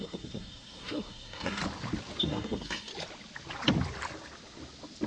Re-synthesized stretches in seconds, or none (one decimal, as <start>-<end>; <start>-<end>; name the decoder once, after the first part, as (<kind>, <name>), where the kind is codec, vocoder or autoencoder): 0.0-1.6 (codec, SNAC); 2.2-2.9